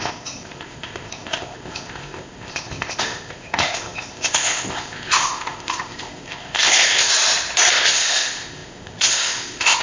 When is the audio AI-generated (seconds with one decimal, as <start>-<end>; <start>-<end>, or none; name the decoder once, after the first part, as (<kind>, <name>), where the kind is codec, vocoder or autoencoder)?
0.0-7.1 (codec, ZipCodec); 7.7-9.8